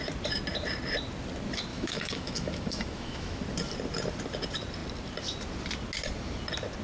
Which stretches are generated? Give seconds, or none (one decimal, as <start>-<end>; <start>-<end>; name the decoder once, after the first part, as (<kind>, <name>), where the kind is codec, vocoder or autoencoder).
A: 1.7-3.4 (autoencoder, DAC-VAE)